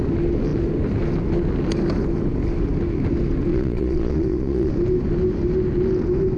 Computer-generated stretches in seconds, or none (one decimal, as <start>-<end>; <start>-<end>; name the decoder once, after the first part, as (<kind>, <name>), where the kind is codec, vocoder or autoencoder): 3.5-4.7 (vocoder, Vocos)